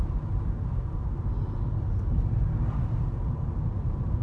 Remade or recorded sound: recorded